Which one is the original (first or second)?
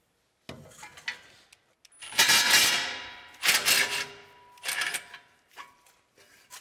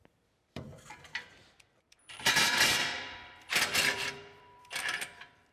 first